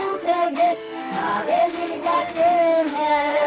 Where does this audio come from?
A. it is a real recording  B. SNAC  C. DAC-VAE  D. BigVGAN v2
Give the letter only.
C